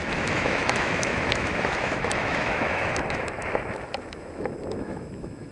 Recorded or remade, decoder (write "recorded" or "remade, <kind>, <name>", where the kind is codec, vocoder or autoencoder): remade, autoencoder, DAC-VAE